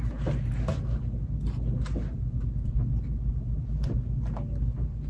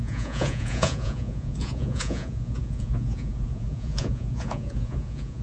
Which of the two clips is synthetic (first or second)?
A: second